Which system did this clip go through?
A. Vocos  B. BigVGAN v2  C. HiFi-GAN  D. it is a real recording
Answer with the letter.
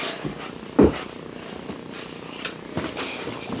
D